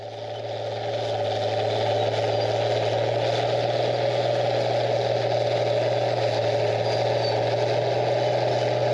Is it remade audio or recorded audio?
recorded